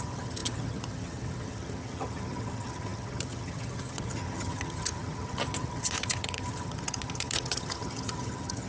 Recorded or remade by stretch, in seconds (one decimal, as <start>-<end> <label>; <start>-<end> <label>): 0.0-8.7 remade